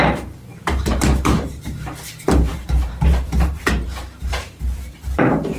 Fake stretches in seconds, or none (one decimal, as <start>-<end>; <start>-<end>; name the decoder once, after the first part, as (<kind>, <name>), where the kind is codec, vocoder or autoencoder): 0.0-5.6 (vocoder, BigVGAN v2)